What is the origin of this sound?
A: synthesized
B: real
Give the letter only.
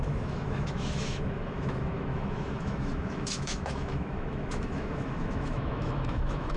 A